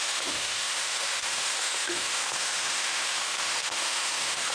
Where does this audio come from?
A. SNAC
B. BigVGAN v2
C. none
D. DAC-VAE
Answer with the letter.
D